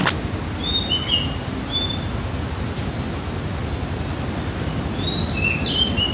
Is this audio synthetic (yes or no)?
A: no